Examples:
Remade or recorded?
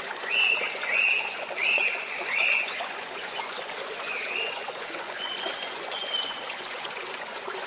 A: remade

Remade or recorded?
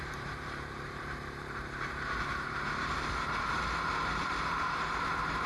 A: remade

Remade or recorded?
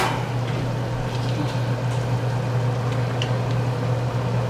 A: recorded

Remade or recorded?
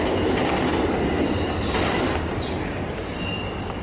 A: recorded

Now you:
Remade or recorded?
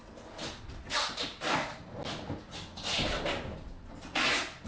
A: recorded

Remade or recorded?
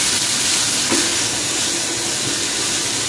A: recorded